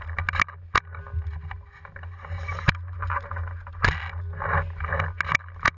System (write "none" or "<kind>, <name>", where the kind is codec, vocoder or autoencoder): none